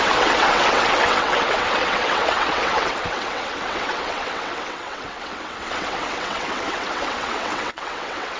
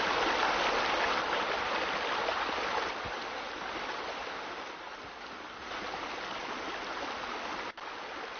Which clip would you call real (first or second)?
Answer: second